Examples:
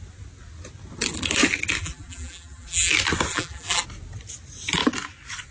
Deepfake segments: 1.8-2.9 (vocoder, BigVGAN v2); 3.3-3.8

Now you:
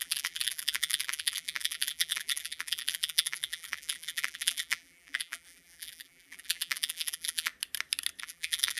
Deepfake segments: 0.0-7.5 (vocoder, BigVGAN v2); 8.2-8.8

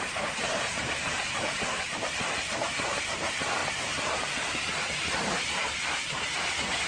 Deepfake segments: 0.0-6.9 (vocoder, BigVGAN v2)

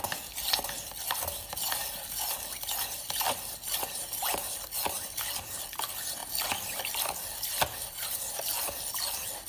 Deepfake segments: 6.2-6.8 (vocoder, BigVGAN v2); 7.3-8.1

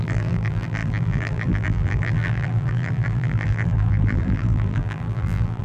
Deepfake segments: 0.0-5.6 (vocoder, BigVGAN v2)

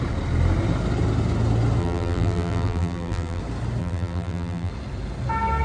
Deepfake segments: 1.8-3.4 (vocoder, BigVGAN v2); 3.8-4.7